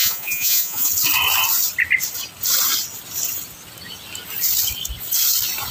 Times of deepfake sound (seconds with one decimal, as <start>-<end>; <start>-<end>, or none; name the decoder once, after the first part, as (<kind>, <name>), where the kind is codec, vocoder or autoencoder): 0.0-0.9 (vocoder, Vocos)